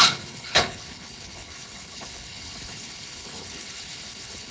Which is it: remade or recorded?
remade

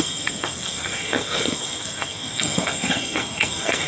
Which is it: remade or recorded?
remade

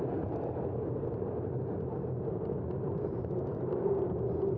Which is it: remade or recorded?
remade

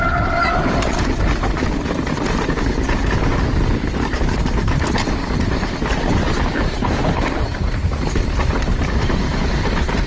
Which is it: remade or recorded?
remade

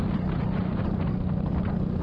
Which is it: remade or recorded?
recorded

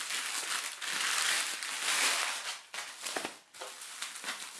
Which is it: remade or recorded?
recorded